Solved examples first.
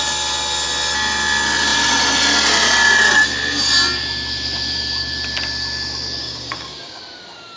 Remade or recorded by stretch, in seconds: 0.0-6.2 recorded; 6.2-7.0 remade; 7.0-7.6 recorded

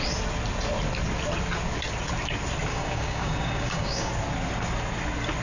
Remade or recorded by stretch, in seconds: 0.0-2.7 recorded; 2.7-4.1 remade; 4.1-5.4 recorded